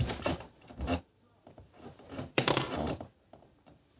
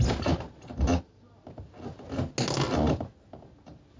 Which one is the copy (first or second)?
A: first